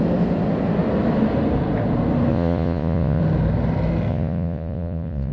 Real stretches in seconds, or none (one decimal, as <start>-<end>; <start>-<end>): 0.0-2.3; 3.2-4.1